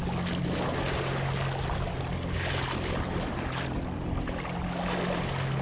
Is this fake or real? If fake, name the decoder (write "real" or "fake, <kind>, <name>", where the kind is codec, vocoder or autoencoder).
real